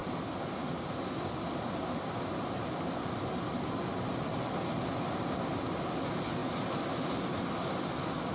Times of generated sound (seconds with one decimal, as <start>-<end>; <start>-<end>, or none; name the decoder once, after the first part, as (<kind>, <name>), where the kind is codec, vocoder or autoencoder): none